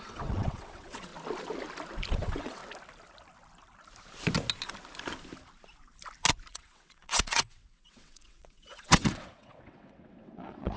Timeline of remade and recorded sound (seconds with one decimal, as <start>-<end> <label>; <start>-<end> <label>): 0.0-1.1 remade; 1.1-2.1 recorded; 2.1-2.6 remade; 2.6-6.5 recorded; 6.5-10.8 remade